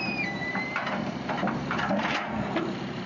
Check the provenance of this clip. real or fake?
fake